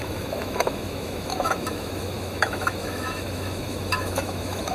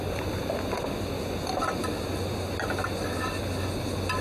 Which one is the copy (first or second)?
first